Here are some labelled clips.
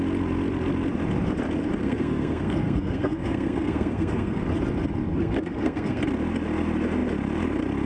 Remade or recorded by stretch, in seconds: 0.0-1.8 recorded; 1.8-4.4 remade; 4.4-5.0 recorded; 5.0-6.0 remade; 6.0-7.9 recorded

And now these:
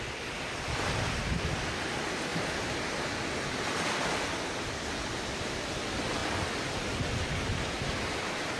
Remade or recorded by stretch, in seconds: 0.0-8.6 recorded